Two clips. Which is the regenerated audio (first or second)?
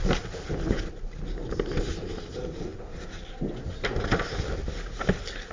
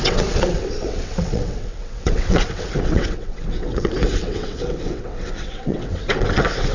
second